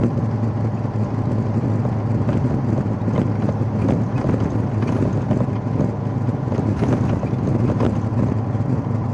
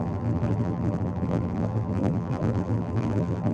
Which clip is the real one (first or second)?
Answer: first